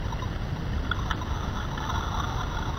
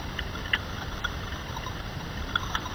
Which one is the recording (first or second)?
first